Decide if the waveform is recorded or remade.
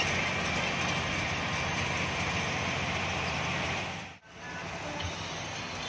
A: recorded